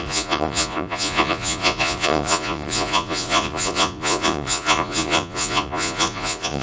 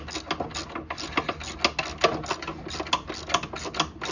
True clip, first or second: second